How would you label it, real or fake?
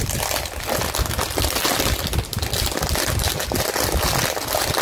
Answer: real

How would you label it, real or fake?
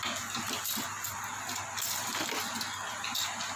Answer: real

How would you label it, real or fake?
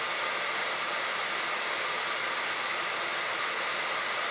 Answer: real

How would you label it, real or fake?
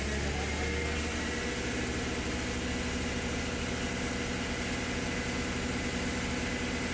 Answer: real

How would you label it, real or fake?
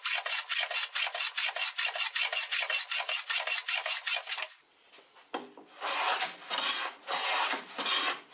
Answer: real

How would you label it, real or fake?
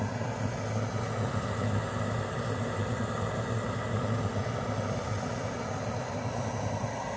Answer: real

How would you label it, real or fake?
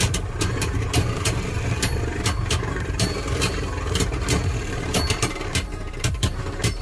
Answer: fake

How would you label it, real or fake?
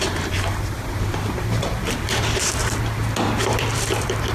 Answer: fake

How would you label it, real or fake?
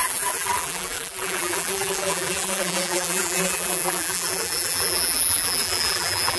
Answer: fake